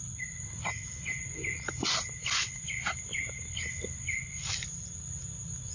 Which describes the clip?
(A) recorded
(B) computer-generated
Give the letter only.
A